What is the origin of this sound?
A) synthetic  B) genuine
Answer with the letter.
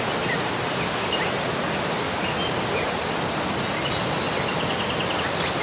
B